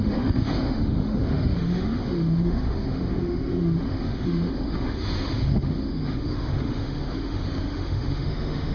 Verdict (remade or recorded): remade